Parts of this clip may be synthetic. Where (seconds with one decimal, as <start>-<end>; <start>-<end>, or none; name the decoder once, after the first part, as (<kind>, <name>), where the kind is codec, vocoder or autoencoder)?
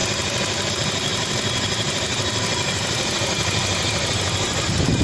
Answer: 0.7-5.0 (vocoder, BigVGAN v2)